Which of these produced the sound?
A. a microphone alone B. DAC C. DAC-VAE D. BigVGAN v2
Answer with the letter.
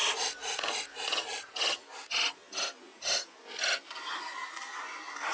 A